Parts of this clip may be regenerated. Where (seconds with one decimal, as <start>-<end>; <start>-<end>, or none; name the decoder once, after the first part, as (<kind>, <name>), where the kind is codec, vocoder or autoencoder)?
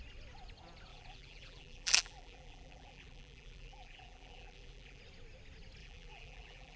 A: 0.9-5.0 (vocoder, BigVGAN v2); 5.8-6.8